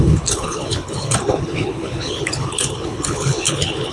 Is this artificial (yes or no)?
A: yes